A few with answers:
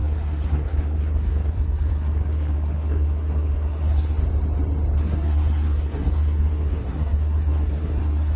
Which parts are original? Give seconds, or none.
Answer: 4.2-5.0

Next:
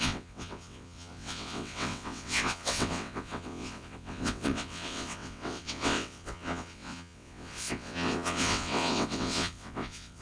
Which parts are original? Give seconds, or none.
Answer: none

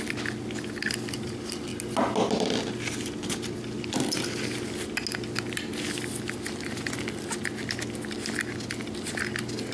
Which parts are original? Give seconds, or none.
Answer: 0.0-9.7

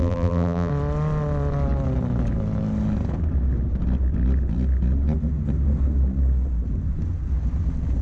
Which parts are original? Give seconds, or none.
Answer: 0.7-8.0

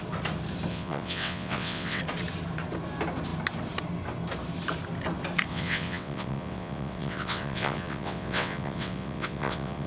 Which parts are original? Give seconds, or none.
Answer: 0.0-0.7; 2.0-5.5

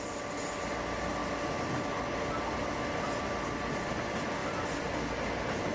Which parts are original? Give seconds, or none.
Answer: 0.0-5.7

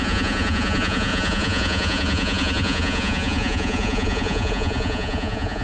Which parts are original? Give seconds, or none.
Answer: none

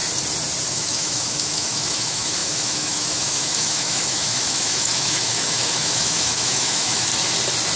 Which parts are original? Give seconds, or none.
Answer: 0.0-0.7; 7.1-7.8